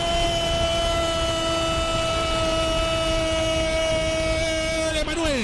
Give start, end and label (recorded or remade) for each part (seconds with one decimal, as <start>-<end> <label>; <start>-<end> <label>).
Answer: 0.0-5.4 recorded

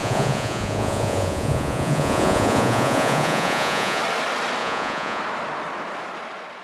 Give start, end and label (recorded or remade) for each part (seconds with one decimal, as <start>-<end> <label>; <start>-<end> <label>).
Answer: 0.0-4.0 remade; 4.0-4.6 recorded; 4.6-5.2 remade; 5.2-6.6 recorded

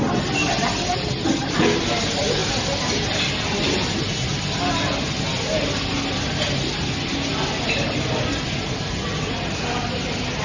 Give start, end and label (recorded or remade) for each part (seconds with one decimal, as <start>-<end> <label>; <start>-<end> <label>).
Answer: 0.0-10.4 recorded

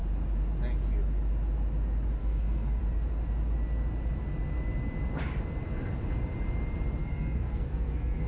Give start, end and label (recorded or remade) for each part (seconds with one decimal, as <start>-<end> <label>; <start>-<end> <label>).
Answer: 0.0-2.2 recorded; 2.2-2.8 remade; 2.8-7.0 recorded; 7.0-8.3 remade

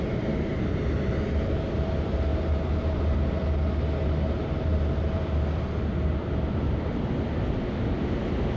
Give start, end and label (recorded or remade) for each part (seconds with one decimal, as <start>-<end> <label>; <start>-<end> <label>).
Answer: 0.0-2.3 recorded; 2.3-3.0 remade; 3.0-8.6 recorded

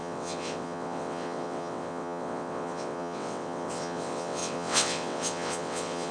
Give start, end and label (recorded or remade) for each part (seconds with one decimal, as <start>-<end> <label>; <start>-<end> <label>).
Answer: 0.0-6.1 remade

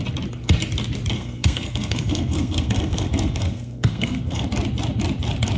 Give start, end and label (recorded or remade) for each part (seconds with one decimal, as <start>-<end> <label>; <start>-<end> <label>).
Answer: 0.0-1.1 recorded; 1.1-4.5 remade; 4.5-5.6 recorded